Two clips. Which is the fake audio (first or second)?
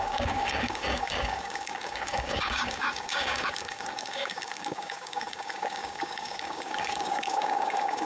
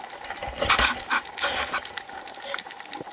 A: first